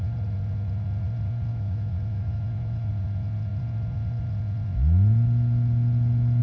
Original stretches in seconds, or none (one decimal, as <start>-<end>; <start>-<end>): 0.0-1.5; 2.9-6.4